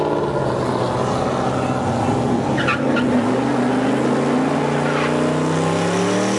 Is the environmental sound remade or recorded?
recorded